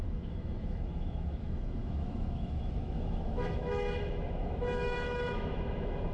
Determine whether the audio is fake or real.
fake